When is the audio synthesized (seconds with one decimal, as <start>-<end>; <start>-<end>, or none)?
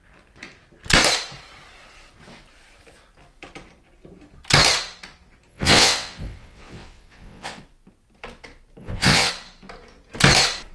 5.5-7.6; 8.8-9.3